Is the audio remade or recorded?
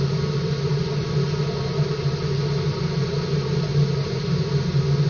recorded